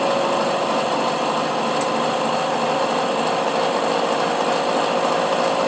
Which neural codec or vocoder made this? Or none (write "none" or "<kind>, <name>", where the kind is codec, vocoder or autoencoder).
none